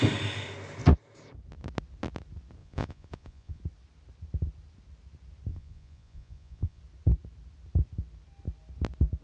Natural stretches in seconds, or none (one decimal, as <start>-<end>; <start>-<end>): 0.0-2.6; 3.6-5.5; 6.8-9.2